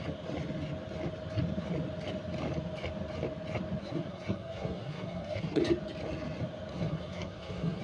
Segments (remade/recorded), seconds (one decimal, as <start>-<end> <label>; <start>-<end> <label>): 0.0-3.8 recorded; 3.8-5.6 remade; 5.6-6.7 recorded; 6.7-7.8 remade